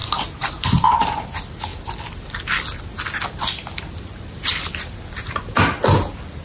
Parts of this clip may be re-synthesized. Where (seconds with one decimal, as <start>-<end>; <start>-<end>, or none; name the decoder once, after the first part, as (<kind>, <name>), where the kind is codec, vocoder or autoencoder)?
none